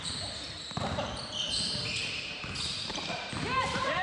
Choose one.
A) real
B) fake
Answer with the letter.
B